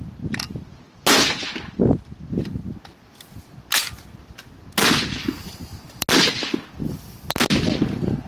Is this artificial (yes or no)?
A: no